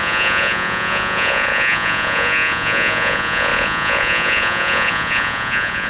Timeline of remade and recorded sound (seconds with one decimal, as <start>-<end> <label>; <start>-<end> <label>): 0.0-5.9 remade